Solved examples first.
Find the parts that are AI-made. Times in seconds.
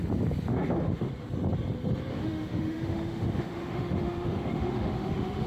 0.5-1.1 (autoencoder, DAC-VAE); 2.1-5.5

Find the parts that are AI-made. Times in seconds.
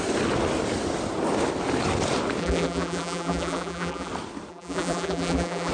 2.4-4.1 (vocoder, BigVGAN v2); 4.5-5.7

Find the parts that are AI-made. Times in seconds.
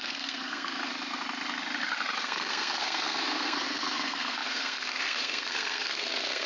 0.0-0.9 (codec, SNAC); 2.2-6.5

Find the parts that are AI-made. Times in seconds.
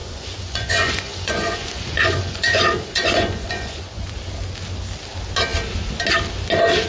0.0-4.1 (vocoder, Vocos)